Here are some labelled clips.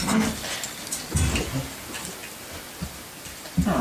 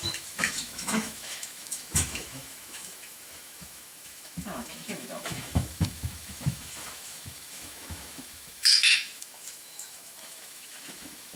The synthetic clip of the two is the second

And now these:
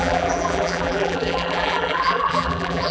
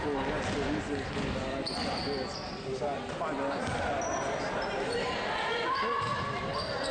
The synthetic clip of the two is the first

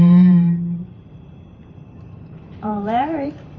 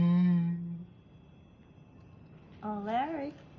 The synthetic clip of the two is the first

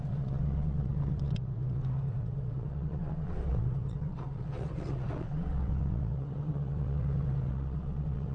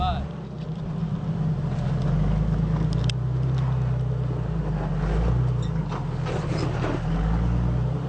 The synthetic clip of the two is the first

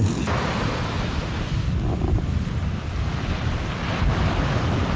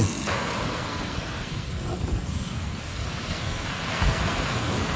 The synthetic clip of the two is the second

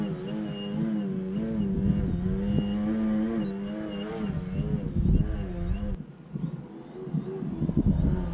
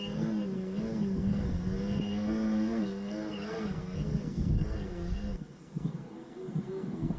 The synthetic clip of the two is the second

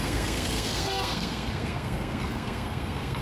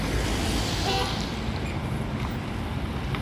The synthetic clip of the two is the first